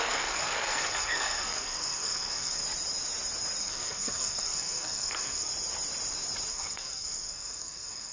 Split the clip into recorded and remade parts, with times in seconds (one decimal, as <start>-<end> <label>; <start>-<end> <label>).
0.0-2.6 remade; 2.6-3.6 recorded; 3.6-5.5 remade; 5.5-6.5 recorded; 6.5-8.1 remade